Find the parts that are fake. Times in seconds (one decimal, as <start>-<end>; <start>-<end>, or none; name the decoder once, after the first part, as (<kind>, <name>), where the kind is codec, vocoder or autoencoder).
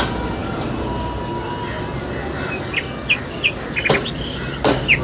none